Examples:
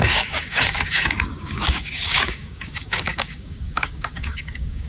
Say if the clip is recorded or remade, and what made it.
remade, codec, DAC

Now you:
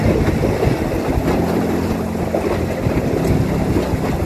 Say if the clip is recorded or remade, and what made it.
recorded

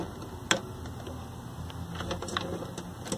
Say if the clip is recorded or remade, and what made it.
recorded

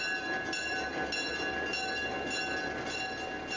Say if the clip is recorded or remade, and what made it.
recorded